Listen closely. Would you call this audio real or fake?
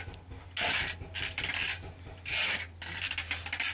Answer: real